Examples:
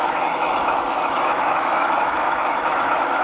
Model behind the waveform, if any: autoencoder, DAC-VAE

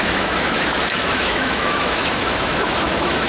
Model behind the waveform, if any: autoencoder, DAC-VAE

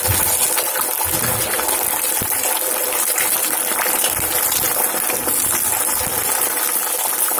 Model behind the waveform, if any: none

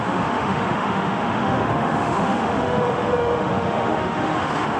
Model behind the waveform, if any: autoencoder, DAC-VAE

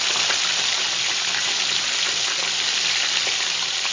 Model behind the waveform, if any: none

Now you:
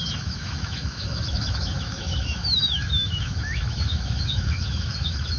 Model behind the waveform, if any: autoencoder, DAC-VAE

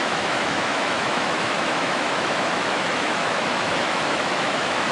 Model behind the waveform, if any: autoencoder, DAC-VAE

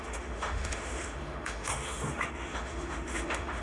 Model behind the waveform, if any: autoencoder, DAC-VAE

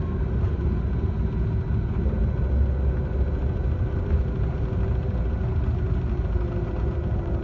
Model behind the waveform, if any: none